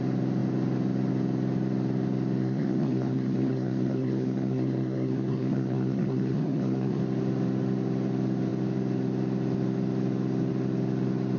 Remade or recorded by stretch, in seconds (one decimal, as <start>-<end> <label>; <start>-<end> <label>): 0.0-2.4 recorded; 2.4-7.0 remade; 7.0-11.4 recorded